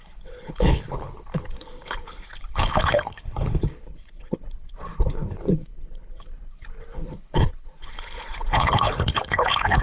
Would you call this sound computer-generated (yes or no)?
yes